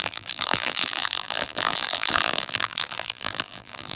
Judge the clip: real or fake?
fake